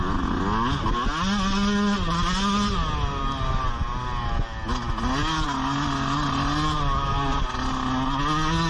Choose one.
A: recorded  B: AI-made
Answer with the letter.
A